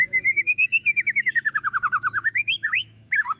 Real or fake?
fake